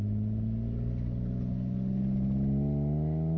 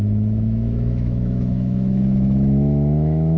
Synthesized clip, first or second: second